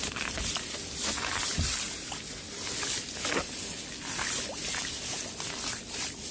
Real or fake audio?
real